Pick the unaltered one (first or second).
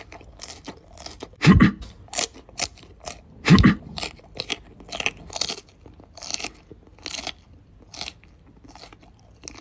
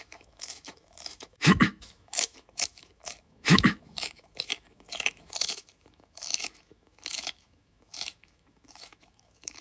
first